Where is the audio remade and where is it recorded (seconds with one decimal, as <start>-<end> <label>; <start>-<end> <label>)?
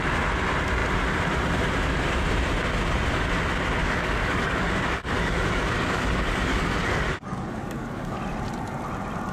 0.0-3.8 recorded; 3.8-8.2 remade; 8.2-9.3 recorded